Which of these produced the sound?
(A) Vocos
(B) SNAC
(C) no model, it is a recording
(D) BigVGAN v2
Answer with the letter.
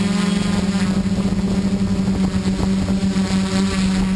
C